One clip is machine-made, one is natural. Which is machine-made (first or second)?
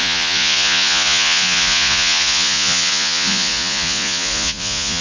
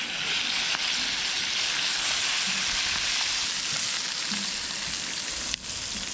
first